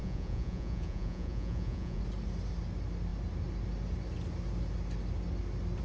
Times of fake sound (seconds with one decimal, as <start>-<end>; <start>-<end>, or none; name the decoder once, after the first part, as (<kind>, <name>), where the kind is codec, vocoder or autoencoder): 0.0-2.0 (vocoder, Vocos)